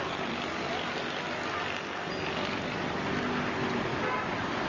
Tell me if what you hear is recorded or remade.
recorded